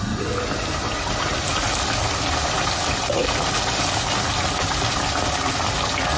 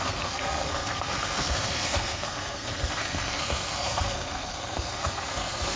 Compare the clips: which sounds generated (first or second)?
second